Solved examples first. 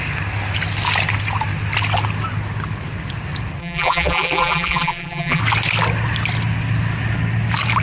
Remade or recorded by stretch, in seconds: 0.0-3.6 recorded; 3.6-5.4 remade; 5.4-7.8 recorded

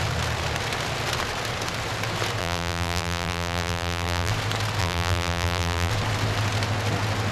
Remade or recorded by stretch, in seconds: 0.0-2.4 recorded; 2.4-4.3 remade; 4.3-4.8 recorded; 4.8-5.9 remade; 5.9-7.3 recorded

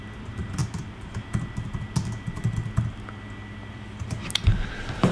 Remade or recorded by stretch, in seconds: 0.0-0.6 remade; 0.6-3.7 recorded; 3.7-5.1 remade

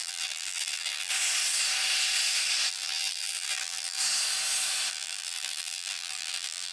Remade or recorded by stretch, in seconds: 0.0-1.1 remade; 1.1-2.7 recorded; 2.7-4.0 remade; 4.0-4.9 recorded; 4.9-6.7 remade

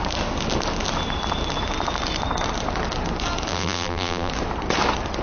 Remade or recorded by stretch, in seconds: 0.0-3.5 recorded; 3.5-4.3 remade; 4.3-5.2 recorded

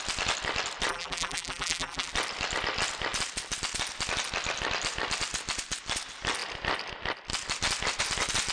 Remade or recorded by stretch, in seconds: 0.0-0.9 recorded; 0.9-2.1 remade; 2.1-8.5 recorded